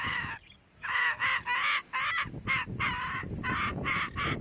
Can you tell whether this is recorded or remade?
recorded